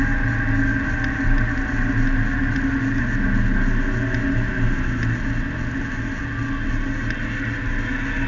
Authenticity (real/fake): real